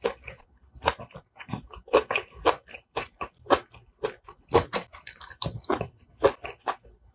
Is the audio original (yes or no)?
yes